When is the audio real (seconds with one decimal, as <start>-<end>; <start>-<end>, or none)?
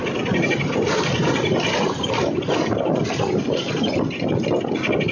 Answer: 3.1-5.1